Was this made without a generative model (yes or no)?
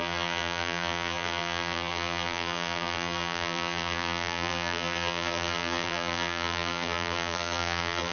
no